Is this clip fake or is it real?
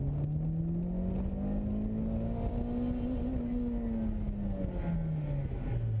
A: real